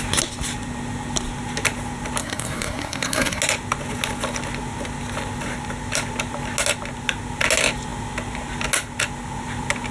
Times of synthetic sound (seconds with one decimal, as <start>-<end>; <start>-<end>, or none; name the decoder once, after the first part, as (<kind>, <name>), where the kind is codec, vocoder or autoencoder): 2.2-3.4 (codec, SNAC)